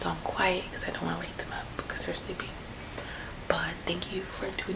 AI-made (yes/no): no